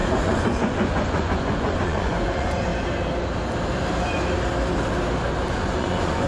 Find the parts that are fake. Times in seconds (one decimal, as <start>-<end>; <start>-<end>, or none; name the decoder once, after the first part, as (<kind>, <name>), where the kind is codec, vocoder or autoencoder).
0.0-2.7 (vocoder, Vocos); 5.5-6.3